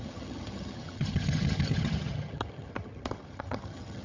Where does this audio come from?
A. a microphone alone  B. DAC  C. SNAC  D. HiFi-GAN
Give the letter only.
D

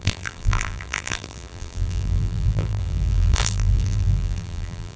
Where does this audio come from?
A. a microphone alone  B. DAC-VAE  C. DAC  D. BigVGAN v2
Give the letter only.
D